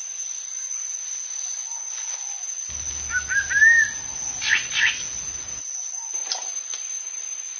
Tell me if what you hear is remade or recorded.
recorded